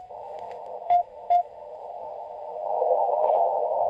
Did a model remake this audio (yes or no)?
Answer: yes